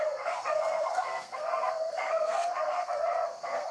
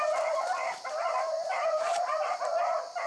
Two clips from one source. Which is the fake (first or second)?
first